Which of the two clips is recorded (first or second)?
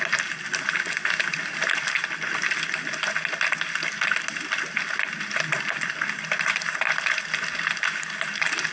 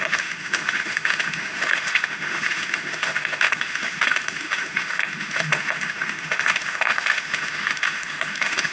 first